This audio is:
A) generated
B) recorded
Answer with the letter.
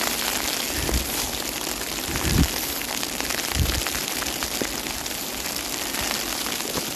B